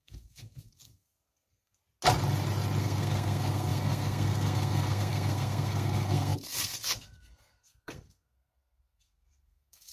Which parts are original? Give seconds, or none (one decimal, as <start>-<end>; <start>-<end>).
1.8-2.8